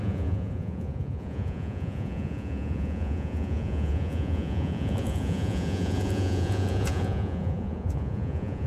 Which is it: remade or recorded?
remade